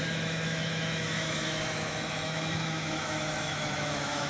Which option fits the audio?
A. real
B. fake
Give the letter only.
B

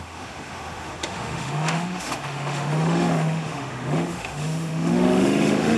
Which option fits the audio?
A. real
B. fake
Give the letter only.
B